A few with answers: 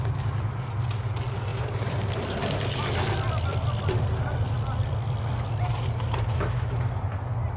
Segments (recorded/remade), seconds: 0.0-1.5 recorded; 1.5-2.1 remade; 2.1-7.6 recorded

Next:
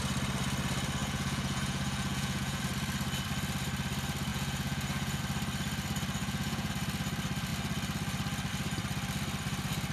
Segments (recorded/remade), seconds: 0.0-1.0 recorded; 1.0-2.6 remade; 2.6-4.3 recorded; 4.3-5.2 remade; 5.2-6.2 recorded; 6.2-6.7 remade; 6.7-9.9 recorded

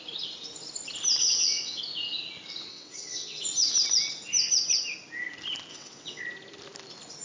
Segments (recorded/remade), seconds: 0.0-1.2 recorded; 1.2-1.8 remade; 1.8-2.7 recorded; 2.7-3.4 remade; 3.4-5.7 recorded; 5.7-6.2 remade; 6.2-7.2 recorded

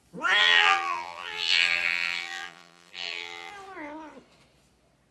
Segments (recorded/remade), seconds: 0.0-0.4 recorded; 0.4-3.5 remade; 3.5-5.1 recorded

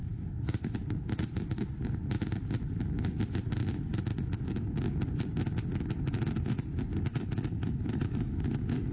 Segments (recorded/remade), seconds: 0.0-0.8 remade; 0.8-7.1 recorded; 7.1-8.4 remade; 8.4-8.9 recorded

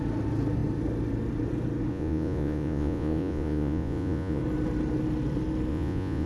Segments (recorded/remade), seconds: 0.0-1.9 recorded; 1.9-4.4 remade; 4.4-5.7 recorded; 5.7-6.3 remade

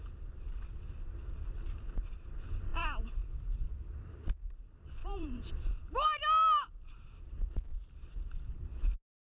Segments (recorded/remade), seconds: 0.0-2.7 recorded; 2.7-3.3 remade; 3.3-5.0 recorded; 5.0-5.5 remade; 5.5-9.3 recorded

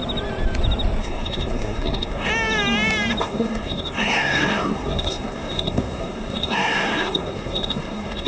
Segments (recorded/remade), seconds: 0.0-1.0 recorded; 1.0-2.3 remade; 2.3-3.2 recorded; 3.2-8.3 remade